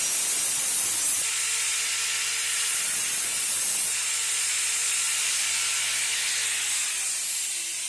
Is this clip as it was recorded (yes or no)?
yes